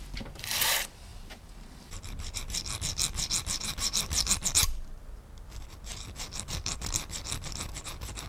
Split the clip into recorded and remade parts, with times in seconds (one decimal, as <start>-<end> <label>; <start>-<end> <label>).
0.0-8.3 remade